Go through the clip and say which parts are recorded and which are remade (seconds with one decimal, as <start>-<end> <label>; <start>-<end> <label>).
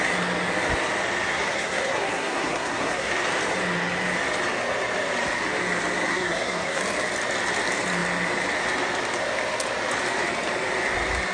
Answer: 0.0-1.3 recorded; 1.3-3.1 remade; 3.1-6.1 recorded; 6.1-6.8 remade; 6.8-11.3 recorded